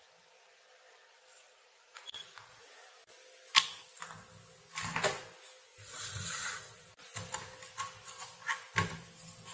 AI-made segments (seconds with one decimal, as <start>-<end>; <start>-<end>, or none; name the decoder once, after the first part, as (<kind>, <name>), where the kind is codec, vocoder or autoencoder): 1.4-2.9 (vocoder, Vocos); 5.7-6.9